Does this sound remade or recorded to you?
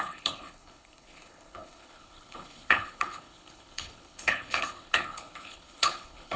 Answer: remade